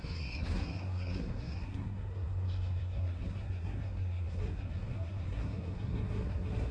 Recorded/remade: remade